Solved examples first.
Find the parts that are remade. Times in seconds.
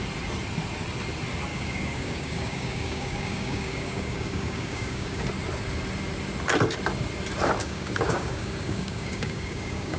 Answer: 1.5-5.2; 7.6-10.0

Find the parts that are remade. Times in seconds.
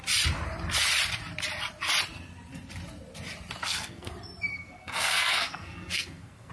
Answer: 3.6-4.1; 4.5-6.5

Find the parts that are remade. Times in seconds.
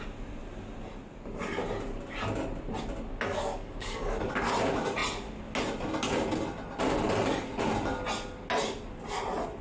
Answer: 3.3-4.5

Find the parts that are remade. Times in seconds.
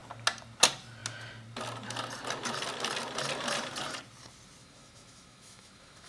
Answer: 4.6-6.1